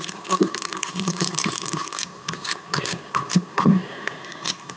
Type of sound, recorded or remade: remade